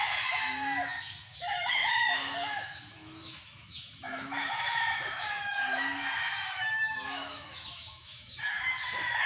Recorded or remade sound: remade